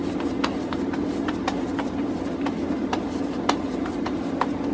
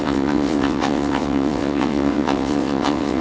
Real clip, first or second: first